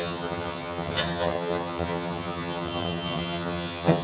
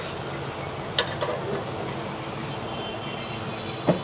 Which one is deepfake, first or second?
first